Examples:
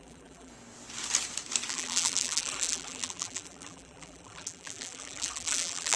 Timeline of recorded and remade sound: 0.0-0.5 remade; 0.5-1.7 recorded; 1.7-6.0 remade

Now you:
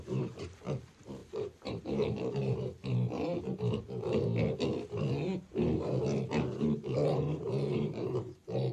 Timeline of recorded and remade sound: 0.0-2.8 remade; 2.8-7.1 recorded; 7.1-8.7 remade

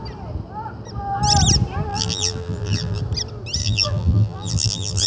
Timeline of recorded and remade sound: 0.0-1.9 recorded; 1.9-3.0 remade; 3.0-3.6 recorded; 3.6-5.1 remade

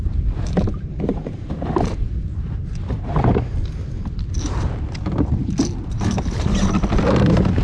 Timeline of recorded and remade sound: 0.0-2.6 remade; 2.6-5.8 recorded; 5.8-7.6 remade

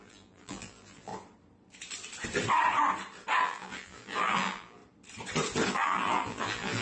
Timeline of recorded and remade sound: 0.0-1.1 remade; 1.1-3.4 recorded; 3.4-4.8 remade; 4.8-5.7 recorded; 5.7-6.8 remade

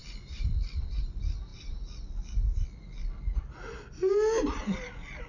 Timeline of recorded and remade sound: 0.0-0.9 remade; 0.9-5.3 recorded